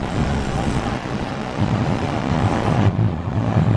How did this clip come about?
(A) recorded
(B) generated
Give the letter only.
B